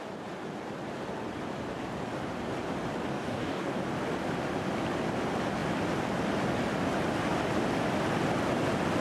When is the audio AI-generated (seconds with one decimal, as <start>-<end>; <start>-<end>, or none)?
3.1-3.7